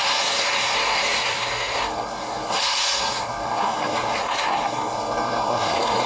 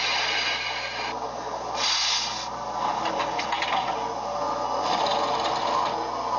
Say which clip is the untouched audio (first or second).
second